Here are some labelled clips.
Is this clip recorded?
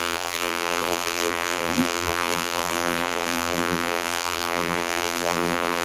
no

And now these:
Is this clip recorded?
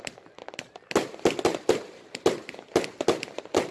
yes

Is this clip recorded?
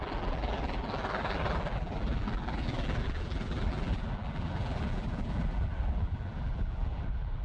no